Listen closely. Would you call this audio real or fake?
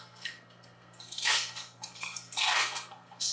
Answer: fake